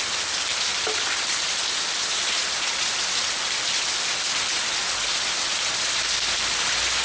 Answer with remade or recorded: recorded